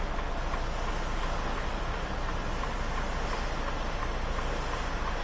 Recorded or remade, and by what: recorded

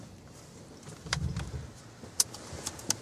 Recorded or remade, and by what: recorded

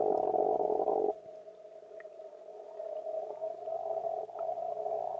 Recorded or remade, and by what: recorded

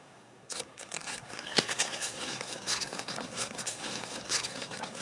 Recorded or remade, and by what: remade, codec, SNAC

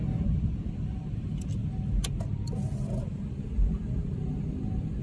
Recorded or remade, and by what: recorded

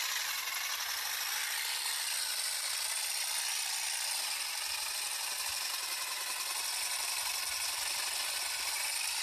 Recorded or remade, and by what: recorded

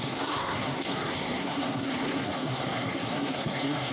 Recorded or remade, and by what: remade, codec, SNAC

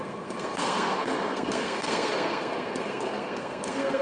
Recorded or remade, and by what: remade, codec, SNAC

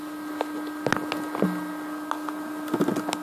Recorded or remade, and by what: recorded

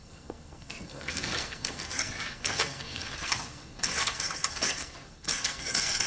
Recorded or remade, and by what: remade, codec, SNAC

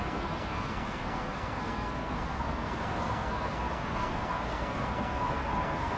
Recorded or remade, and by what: remade, codec, SNAC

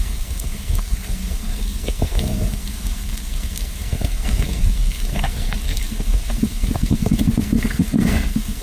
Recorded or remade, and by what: remade, codec, SNAC